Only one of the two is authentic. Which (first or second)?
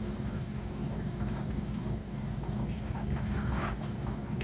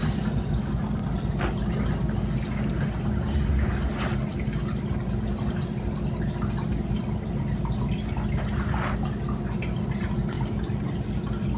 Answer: second